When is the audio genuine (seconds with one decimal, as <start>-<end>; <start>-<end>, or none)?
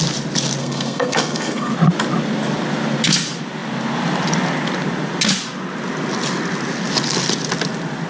0.0-0.6; 1.7-8.1